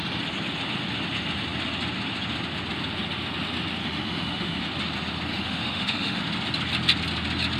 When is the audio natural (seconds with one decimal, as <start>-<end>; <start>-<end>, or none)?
0.0-3.8; 4.6-5.3; 6.2-7.6